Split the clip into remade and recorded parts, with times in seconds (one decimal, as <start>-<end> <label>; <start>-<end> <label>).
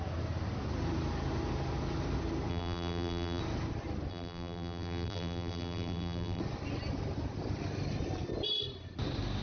0.0-2.5 recorded; 2.5-3.4 remade; 3.4-4.1 recorded; 4.1-6.4 remade; 6.4-9.4 recorded